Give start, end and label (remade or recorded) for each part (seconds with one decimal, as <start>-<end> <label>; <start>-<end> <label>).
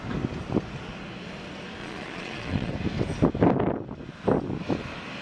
0.0-1.8 recorded; 1.8-2.7 remade; 2.7-5.2 recorded